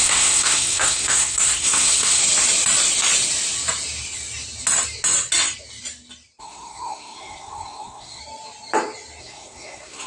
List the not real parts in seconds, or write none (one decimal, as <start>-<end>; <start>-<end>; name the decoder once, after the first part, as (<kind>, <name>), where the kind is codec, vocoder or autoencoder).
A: 0.0-2.2 (codec, SNAC); 6.4-8.2; 9.2-10.1